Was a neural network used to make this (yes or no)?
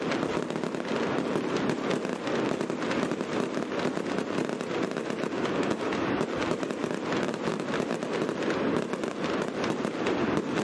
no